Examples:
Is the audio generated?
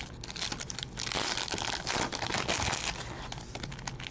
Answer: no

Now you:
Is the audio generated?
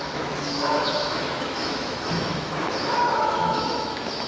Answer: yes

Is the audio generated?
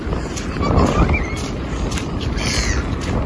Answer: no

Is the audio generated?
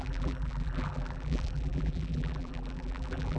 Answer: yes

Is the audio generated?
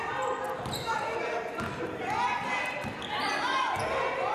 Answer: no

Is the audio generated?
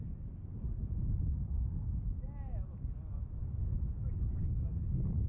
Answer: no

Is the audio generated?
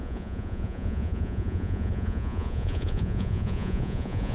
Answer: yes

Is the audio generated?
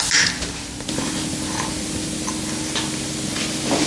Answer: no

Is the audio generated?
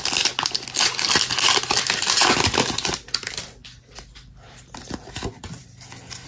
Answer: no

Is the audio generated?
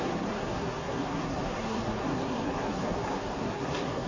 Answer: yes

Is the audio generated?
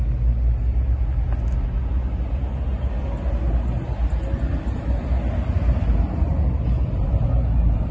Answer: no